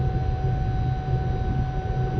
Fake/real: real